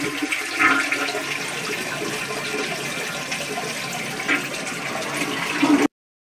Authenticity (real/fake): real